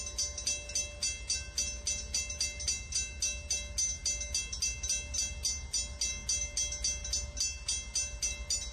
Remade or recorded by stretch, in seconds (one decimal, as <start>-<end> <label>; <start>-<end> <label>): 0.0-8.7 recorded